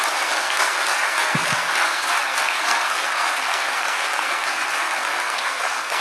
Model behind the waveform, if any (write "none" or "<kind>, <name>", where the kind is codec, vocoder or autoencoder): codec, SNAC